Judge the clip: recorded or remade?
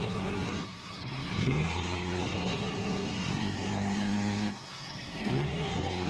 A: remade